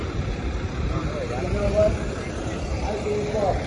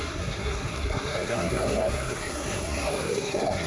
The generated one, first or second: second